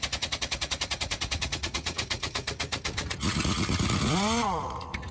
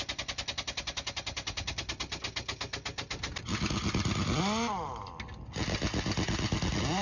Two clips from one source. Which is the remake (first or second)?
first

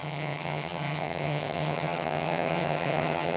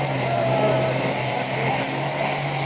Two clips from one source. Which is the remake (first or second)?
first